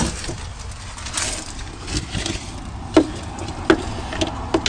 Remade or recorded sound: recorded